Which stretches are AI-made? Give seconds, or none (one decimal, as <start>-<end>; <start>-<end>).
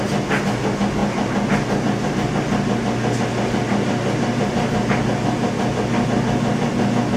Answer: none